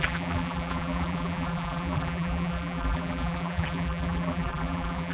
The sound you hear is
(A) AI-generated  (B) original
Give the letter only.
A